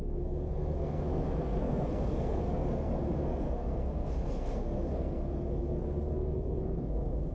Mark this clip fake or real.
fake